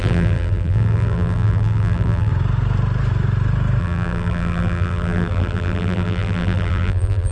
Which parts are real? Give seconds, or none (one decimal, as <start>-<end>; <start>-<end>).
2.3-3.8